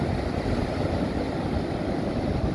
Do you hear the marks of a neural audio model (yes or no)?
no